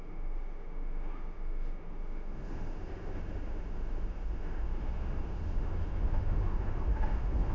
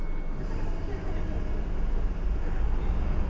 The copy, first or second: first